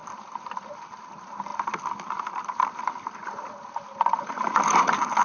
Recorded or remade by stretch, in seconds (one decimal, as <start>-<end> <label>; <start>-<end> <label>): 0.0-5.2 recorded